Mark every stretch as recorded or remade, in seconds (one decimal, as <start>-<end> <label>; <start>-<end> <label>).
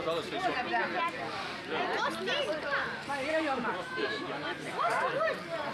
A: 0.0-3.3 recorded; 3.3-5.1 remade; 5.1-5.7 recorded